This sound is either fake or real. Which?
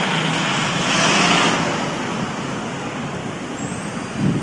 real